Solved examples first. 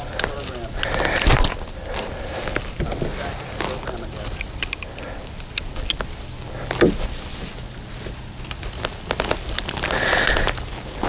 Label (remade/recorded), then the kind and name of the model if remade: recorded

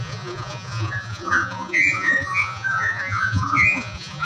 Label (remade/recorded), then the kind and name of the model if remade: remade, vocoder, Vocos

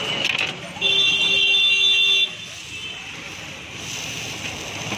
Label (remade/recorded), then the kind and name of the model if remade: recorded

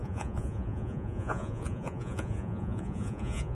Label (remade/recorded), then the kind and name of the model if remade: remade, vocoder, Vocos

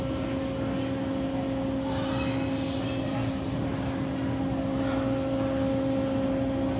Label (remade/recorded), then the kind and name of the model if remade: recorded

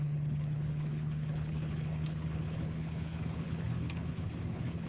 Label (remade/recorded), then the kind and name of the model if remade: remade, codec, HILCodec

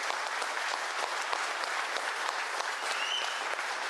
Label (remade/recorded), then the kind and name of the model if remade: recorded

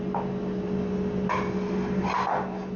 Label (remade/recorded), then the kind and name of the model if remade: recorded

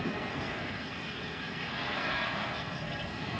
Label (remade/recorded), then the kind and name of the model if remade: remade, codec, SNAC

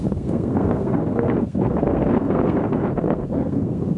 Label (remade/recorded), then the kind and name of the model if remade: remade, codec, SNAC